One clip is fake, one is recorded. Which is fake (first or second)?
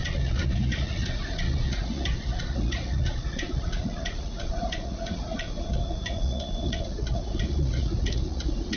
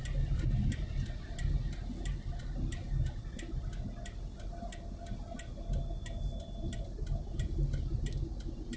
first